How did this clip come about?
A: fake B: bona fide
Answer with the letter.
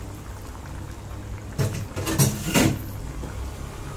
B